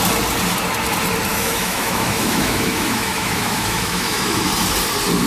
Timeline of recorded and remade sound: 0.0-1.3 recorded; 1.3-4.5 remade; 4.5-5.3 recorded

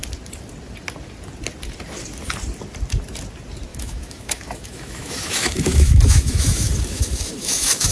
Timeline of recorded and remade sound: 0.0-3.7 recorded; 3.7-7.9 remade

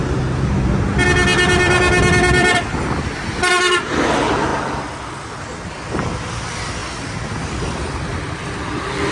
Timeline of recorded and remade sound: 0.0-9.1 recorded

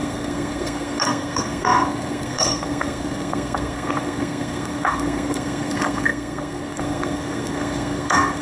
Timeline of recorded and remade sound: 0.0-8.4 remade

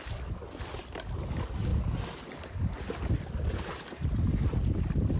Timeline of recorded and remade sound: 0.0-5.2 recorded

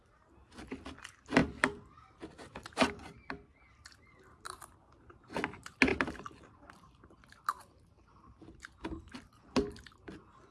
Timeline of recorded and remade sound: 0.0-10.5 recorded